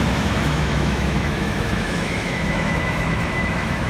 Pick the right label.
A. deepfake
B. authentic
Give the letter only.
A